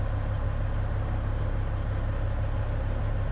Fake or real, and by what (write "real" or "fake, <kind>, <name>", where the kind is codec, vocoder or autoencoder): real